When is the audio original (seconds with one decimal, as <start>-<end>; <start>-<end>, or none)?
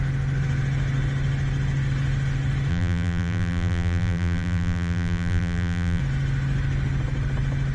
0.0-2.7; 6.0-7.7